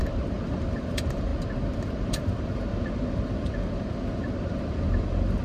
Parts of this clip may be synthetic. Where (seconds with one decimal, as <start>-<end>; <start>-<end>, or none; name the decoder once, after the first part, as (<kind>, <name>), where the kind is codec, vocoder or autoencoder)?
0.0-1.3 (vocoder, BigVGAN v2); 1.9-5.4